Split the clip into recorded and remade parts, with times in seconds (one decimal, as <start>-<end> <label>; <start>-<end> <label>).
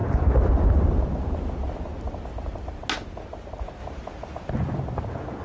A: 0.0-5.4 recorded